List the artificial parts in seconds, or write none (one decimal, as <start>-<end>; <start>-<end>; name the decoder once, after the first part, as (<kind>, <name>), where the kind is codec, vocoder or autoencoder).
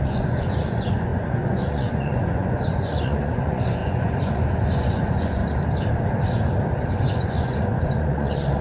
0.0-5.4 (vocoder, Vocos); 6.9-8.6